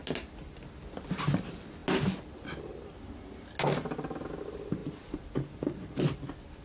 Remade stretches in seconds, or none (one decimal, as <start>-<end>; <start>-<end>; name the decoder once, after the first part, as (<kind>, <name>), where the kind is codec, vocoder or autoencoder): none